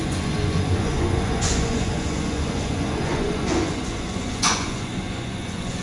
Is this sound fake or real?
fake